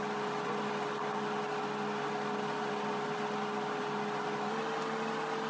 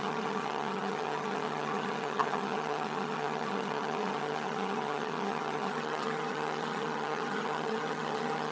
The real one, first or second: first